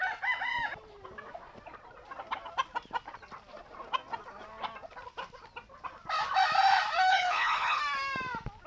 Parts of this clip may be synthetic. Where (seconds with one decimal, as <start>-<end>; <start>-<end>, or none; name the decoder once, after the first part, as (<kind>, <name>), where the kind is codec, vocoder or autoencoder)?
7.1-7.8 (codec, HILCodec)